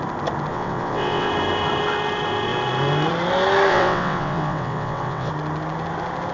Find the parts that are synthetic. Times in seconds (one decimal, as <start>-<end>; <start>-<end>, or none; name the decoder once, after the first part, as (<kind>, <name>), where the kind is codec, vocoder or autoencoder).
0.5-1.3 (vocoder, WaveNeXt); 3.7-5.3